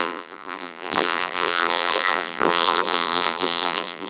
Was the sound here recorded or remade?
remade